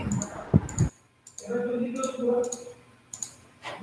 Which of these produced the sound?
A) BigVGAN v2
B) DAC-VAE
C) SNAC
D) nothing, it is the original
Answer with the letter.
D